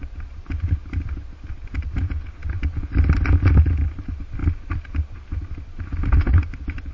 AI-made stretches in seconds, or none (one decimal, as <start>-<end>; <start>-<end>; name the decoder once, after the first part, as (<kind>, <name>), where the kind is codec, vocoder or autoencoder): none